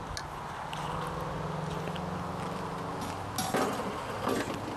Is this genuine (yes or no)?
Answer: yes